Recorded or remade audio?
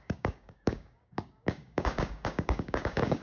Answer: remade